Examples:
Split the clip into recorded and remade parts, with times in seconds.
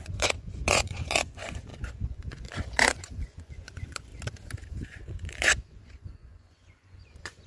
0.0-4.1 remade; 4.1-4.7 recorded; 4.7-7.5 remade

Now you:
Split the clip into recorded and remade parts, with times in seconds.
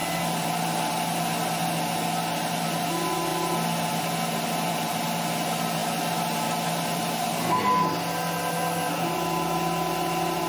0.0-10.5 recorded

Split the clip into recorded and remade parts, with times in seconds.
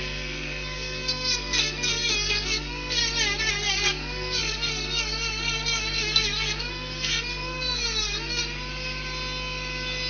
0.0-3.0 remade; 3.0-3.5 recorded; 3.5-8.4 remade; 8.4-10.1 recorded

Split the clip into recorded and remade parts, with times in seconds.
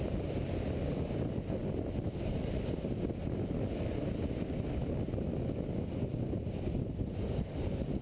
0.0-8.0 recorded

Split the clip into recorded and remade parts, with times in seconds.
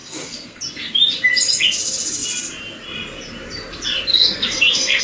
0.0-0.6 remade; 0.6-4.1 recorded; 4.1-5.0 remade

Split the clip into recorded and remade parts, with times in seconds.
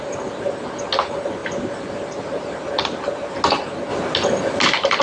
0.0-5.0 recorded